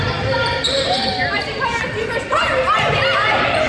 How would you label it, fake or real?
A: fake